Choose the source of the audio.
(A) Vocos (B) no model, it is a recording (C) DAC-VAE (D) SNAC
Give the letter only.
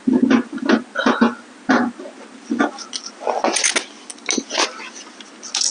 B